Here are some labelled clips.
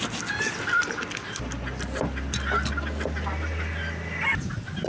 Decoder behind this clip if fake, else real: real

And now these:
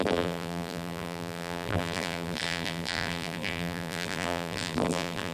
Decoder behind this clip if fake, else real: fake, vocoder, BigVGAN v2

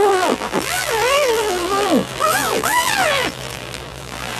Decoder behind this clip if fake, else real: fake, vocoder, BigVGAN v2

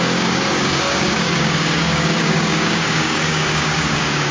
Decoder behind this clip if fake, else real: fake, codec, DAC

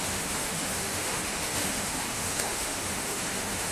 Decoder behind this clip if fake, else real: fake, autoencoder, DAC-VAE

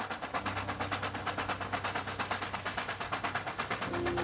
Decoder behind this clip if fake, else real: real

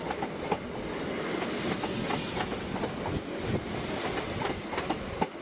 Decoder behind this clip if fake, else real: real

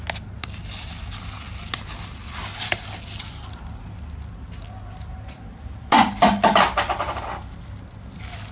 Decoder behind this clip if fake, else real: real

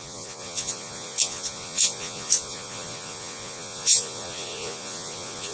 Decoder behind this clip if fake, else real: fake, vocoder, Vocos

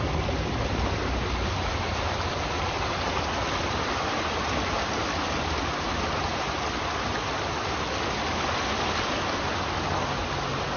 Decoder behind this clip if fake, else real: real